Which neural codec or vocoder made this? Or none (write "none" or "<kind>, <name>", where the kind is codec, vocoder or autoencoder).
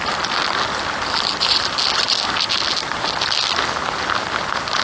none